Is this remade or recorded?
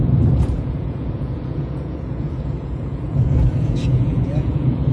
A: remade